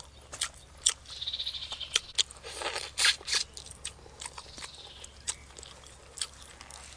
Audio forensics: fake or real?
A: real